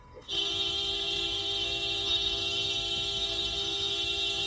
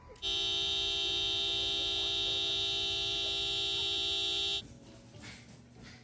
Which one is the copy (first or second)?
first